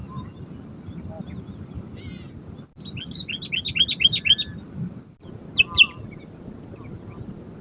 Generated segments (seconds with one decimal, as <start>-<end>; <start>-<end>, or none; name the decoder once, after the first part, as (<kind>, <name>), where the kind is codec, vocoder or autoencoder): none